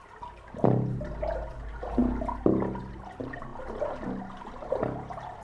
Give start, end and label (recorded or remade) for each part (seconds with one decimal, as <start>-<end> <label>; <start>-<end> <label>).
0.0-5.4 recorded